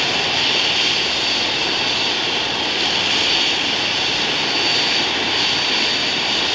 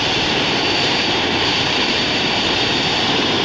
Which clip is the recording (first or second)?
first